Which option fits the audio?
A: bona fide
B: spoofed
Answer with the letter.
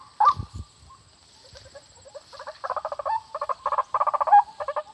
A